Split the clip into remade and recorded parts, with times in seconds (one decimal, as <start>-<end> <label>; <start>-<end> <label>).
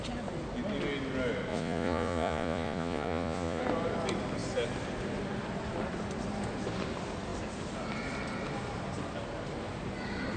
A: 0.0-1.5 recorded; 1.5-3.6 remade; 3.6-10.4 recorded